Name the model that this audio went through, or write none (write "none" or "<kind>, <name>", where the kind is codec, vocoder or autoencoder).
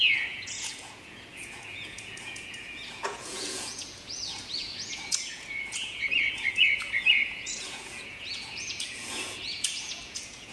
vocoder, Vocos